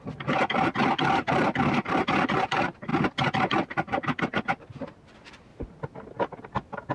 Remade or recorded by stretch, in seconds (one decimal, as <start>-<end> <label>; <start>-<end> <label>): 0.0-5.5 remade; 5.5-6.9 recorded